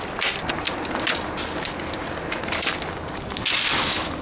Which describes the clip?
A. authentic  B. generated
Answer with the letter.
A